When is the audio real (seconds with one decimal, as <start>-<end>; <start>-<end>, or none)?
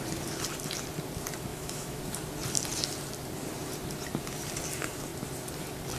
0.0-1.5; 2.0-6.0